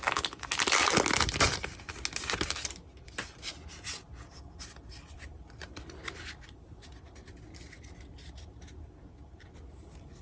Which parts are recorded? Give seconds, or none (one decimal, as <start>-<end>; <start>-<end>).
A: 0.0-10.2